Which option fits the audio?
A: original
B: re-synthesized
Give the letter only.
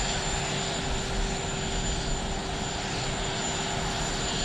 A